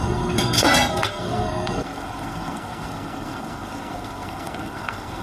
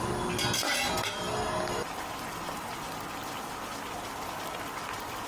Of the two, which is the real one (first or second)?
second